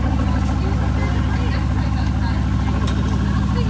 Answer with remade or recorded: recorded